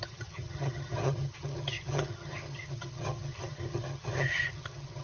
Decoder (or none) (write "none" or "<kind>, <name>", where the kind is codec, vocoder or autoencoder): vocoder, HiFi-GAN